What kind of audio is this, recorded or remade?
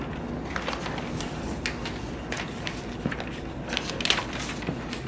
recorded